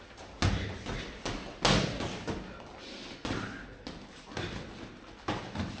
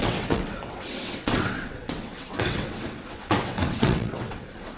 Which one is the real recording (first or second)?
first